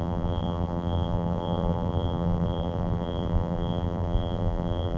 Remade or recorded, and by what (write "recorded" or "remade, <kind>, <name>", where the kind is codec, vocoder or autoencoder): remade, vocoder, BigVGAN v2